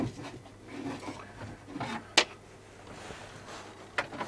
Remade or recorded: recorded